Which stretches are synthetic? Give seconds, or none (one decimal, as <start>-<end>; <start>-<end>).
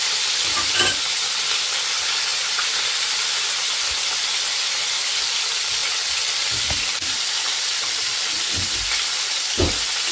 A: 0.0-10.1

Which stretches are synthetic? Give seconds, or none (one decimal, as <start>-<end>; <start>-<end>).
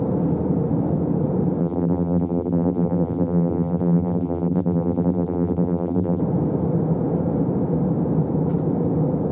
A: 1.6-6.2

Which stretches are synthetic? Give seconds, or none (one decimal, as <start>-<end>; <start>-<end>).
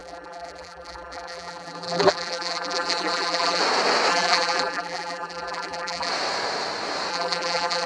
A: 0.0-3.6; 4.1-6.1; 7.1-7.9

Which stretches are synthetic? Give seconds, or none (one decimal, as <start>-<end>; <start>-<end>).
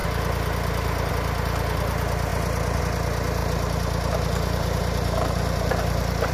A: 3.4-6.3